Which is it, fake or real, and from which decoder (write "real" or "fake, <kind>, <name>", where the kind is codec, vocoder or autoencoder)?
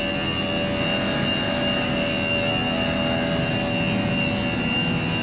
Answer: real